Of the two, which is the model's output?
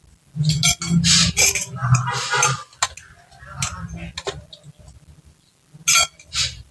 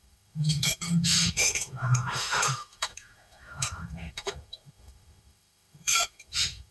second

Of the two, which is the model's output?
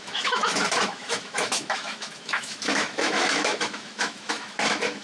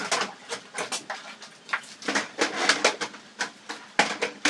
first